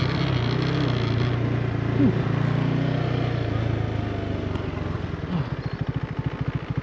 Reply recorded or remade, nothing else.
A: recorded